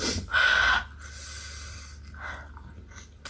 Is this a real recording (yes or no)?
yes